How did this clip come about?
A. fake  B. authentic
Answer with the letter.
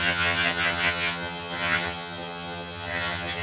A